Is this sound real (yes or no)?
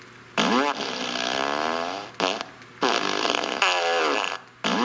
yes